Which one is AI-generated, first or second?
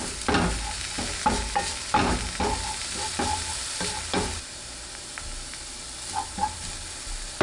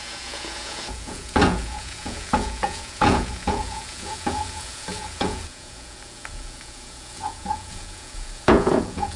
second